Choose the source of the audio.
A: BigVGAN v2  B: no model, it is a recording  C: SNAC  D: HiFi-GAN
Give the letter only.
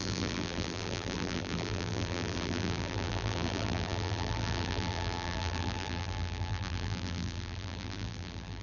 A